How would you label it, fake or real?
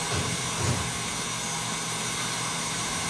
real